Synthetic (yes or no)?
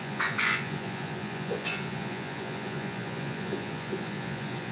yes